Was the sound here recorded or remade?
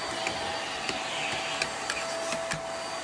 recorded